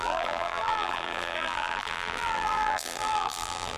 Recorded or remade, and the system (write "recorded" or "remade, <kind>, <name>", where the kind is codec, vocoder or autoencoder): remade, vocoder, BigVGAN v2